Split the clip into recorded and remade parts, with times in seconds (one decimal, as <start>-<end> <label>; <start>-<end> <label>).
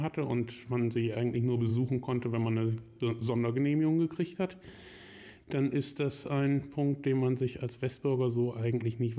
0.0-9.2 recorded